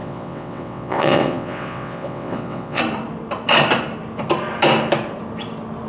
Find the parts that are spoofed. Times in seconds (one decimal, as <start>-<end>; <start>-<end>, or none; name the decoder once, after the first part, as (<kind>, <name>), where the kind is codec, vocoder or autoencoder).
0.0-2.8 (vocoder, WaveNeXt)